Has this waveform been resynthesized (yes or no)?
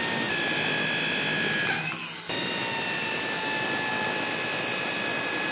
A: no